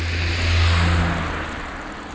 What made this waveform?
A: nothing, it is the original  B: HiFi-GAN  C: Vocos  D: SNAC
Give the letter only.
A